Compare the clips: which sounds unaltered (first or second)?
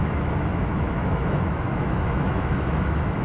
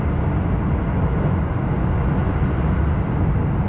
second